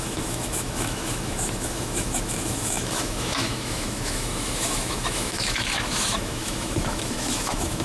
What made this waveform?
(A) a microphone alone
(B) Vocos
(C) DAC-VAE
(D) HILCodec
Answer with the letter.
C